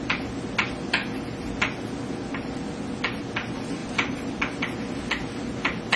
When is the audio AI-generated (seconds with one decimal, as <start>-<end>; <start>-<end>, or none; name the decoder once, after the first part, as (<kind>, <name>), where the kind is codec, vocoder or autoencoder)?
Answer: 3.8-4.3 (vocoder, BigVGAN v2)

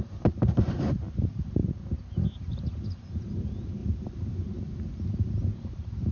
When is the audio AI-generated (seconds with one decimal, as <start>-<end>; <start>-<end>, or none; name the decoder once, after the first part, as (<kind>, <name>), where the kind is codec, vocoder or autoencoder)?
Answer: 0.0-1.6 (vocoder, BigVGAN v2); 2.1-3.8; 5.5-6.1